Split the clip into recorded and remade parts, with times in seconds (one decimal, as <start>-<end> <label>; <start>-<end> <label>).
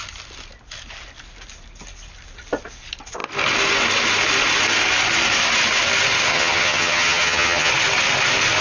0.0-6.3 recorded; 6.3-7.7 remade; 7.7-8.6 recorded